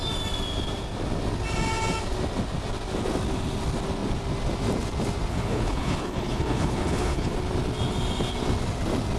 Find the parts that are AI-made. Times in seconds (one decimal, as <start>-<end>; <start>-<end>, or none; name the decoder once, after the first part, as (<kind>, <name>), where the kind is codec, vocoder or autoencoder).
5.3-7.3 (codec, HILCodec)